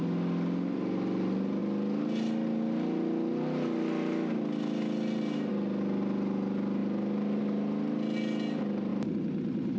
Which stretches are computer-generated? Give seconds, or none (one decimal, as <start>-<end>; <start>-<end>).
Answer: none